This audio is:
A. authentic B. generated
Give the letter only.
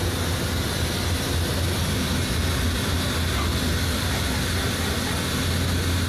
A